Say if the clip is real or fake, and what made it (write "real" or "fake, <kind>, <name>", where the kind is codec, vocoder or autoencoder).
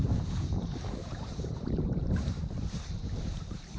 fake, vocoder, BigVGAN v2